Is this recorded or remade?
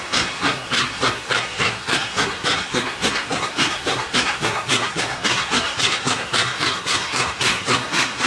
remade